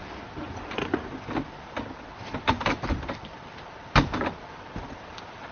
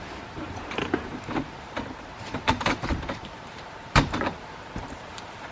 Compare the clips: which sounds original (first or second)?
first